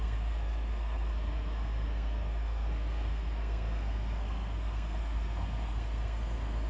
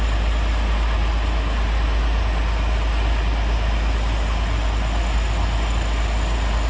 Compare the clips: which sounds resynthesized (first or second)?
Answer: first